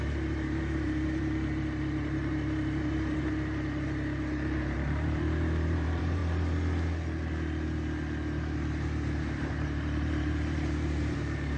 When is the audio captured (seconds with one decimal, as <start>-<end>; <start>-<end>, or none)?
6.2-8.4